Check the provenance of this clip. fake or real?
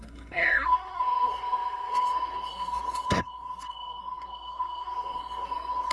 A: fake